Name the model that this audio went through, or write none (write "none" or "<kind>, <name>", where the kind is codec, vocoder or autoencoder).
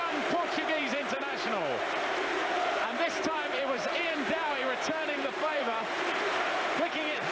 vocoder, BigVGAN v2